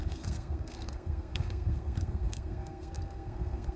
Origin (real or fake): fake